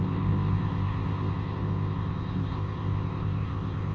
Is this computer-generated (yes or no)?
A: yes